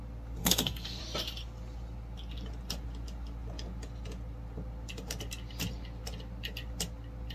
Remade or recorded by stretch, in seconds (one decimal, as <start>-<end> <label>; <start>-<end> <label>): 0.0-0.4 recorded; 0.4-1.0 remade; 1.0-7.3 recorded